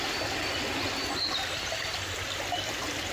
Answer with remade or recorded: recorded